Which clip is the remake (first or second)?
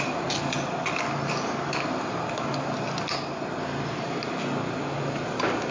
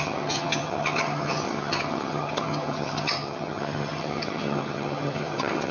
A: second